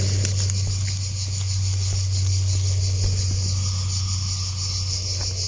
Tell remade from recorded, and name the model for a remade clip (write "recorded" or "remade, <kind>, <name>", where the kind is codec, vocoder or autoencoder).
recorded